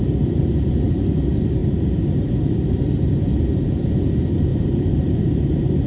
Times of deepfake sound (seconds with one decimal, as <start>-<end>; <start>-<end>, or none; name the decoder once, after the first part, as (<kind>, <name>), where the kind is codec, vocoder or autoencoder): 4.5-5.9 (vocoder, BigVGAN v2)